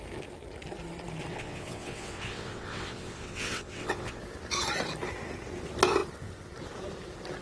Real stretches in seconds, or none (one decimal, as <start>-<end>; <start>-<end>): 0.0-1.3; 4.2-7.4